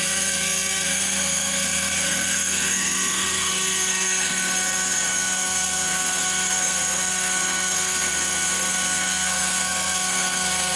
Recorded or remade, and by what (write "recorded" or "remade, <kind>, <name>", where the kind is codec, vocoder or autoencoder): remade, codec, SNAC